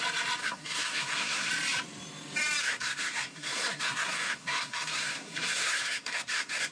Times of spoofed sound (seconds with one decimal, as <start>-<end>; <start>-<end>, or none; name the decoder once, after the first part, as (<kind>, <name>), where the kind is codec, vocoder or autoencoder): 0.4-1.5 (codec, SNAC); 2.6-6.7